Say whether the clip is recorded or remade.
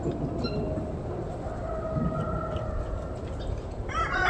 recorded